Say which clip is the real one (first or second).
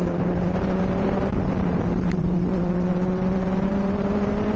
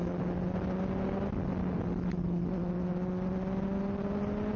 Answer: second